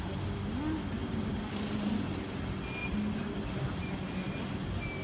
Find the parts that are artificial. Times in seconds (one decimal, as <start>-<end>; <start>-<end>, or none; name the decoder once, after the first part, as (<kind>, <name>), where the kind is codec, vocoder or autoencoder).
none